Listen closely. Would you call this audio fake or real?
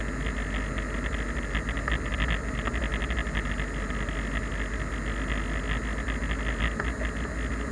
real